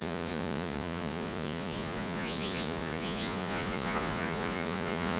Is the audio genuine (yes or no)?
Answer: no